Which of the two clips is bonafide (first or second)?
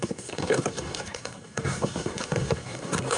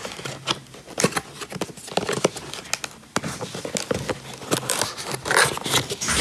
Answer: second